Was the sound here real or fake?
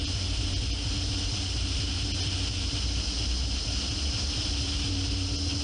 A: real